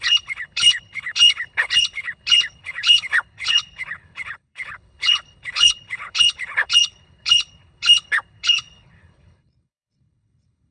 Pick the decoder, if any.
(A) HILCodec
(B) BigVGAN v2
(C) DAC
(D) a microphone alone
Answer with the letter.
A